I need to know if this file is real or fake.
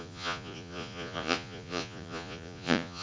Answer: fake